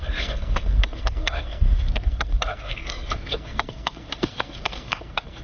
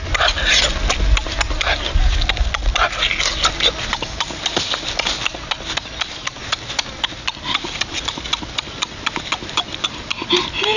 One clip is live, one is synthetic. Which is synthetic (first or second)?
first